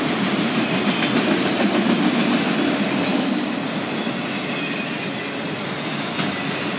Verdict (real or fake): real